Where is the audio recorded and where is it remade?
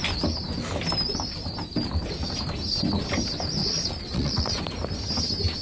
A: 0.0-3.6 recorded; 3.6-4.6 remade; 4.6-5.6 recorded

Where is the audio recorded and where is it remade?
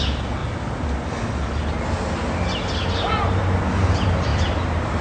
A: 0.0-5.0 recorded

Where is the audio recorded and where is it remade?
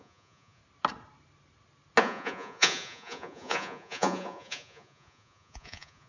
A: 0.0-0.6 remade; 0.6-2.0 recorded; 2.0-6.1 remade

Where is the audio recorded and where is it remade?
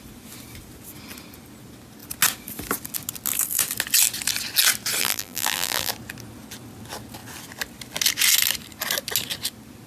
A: 0.0-5.0 recorded; 5.0-5.9 remade; 5.9-9.9 recorded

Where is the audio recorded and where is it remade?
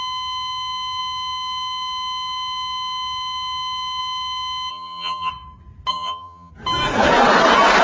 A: 0.0-4.7 recorded; 4.7-5.3 remade; 5.3-5.9 recorded; 5.9-6.5 remade; 6.5-7.8 recorded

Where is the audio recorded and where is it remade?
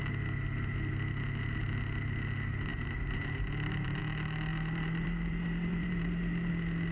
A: 0.0-2.7 recorded; 2.7-4.0 remade; 4.0-4.5 recorded; 4.5-6.5 remade; 6.5-6.9 recorded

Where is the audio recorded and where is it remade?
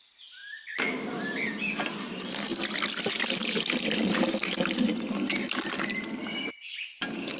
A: 0.0-2.5 remade; 2.5-3.1 recorded; 3.1-7.4 remade